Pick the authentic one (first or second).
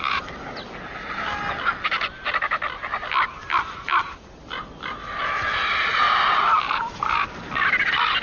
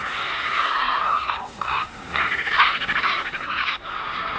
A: first